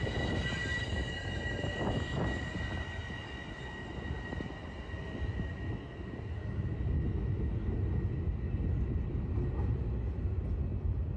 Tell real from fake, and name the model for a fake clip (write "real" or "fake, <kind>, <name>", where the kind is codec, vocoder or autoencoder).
real